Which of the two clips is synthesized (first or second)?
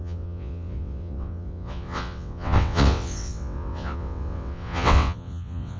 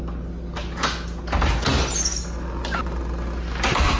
first